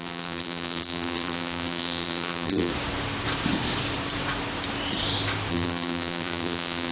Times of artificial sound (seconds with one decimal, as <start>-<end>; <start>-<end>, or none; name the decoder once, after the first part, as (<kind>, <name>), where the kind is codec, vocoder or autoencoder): 0.0-2.7 (vocoder, BigVGAN v2); 5.5-6.9